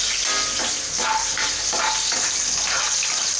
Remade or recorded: recorded